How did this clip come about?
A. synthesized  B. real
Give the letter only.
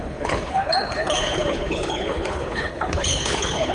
A